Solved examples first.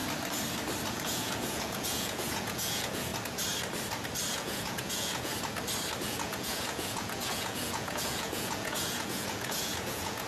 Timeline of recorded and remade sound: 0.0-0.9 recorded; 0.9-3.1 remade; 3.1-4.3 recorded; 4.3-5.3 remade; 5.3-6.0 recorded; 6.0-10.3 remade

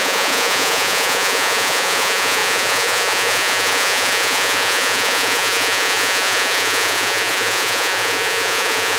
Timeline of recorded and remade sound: 0.0-9.0 remade